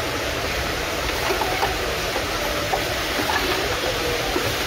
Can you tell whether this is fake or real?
fake